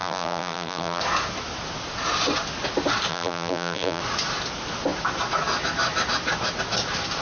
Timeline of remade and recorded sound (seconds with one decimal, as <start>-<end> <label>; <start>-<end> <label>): 0.0-1.0 remade; 1.0-3.1 recorded; 3.1-4.0 remade; 4.0-7.2 recorded